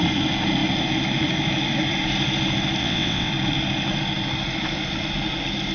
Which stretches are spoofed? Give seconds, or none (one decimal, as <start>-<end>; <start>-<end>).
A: 2.8-3.3